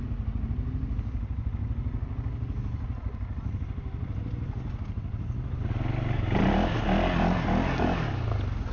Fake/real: real